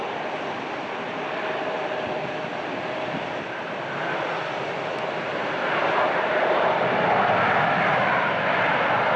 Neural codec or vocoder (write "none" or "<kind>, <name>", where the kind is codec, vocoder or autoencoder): vocoder, BigVGAN v2